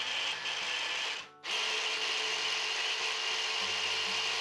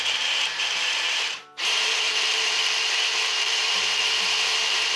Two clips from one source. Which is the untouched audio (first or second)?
first